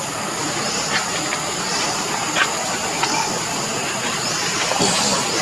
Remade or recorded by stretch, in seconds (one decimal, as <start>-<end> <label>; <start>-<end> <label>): 0.0-5.4 recorded